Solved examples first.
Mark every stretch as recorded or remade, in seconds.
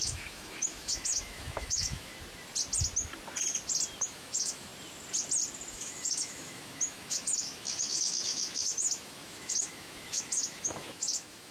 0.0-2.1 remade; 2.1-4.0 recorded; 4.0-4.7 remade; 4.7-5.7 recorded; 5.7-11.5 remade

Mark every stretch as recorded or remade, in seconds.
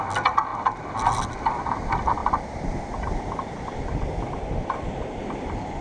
0.0-0.5 recorded; 0.5-1.2 remade; 1.2-2.2 recorded; 2.2-5.8 remade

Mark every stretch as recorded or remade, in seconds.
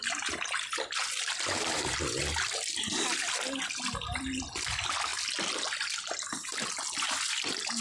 0.0-7.8 recorded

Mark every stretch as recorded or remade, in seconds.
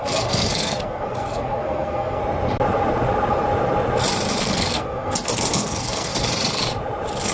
0.0-2.2 remade; 2.2-4.4 recorded; 4.4-6.1 remade; 6.1-7.3 recorded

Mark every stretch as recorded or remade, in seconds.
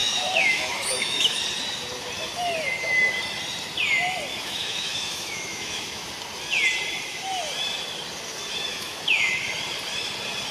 0.0-1.4 remade; 1.4-4.3 recorded; 4.3-6.1 remade; 6.1-8.7 recorded; 8.7-9.3 remade; 9.3-10.5 recorded